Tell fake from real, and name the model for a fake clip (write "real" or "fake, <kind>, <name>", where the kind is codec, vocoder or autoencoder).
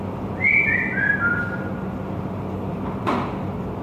real